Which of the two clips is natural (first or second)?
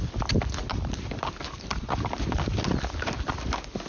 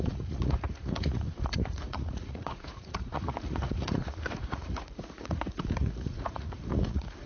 first